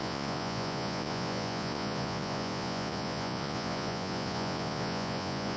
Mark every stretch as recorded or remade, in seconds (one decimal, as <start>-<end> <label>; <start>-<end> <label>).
0.0-5.6 remade